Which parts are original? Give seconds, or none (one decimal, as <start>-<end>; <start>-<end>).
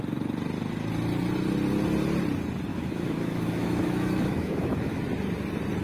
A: 0.0-2.7; 5.0-5.8